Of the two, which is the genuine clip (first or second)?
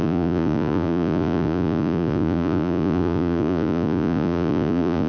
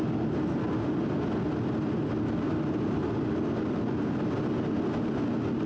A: second